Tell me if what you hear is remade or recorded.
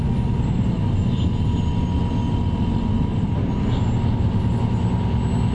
recorded